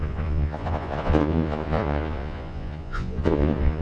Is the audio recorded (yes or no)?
no